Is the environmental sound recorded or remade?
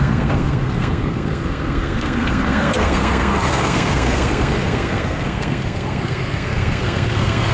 remade